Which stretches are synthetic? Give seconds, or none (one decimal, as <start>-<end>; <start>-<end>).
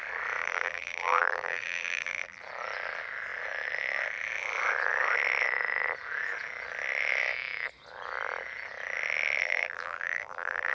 0.4-2.4; 9.4-10.7